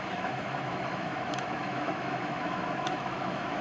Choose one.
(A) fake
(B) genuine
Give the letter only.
A